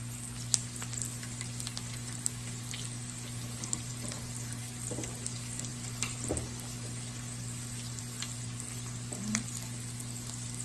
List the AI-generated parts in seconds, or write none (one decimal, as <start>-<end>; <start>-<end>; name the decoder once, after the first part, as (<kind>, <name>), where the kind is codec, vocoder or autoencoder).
none